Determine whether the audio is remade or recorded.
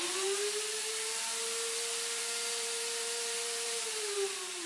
remade